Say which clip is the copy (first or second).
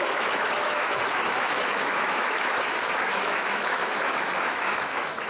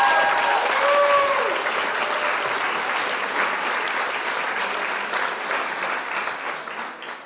first